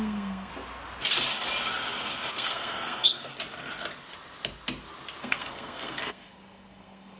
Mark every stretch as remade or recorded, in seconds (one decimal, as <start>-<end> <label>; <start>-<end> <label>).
0.0-0.5 remade; 0.5-2.3 recorded; 2.3-3.3 remade; 3.3-5.2 recorded; 5.2-7.2 remade